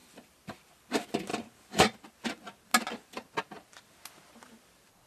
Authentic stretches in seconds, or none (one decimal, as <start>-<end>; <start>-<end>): 0.9-5.1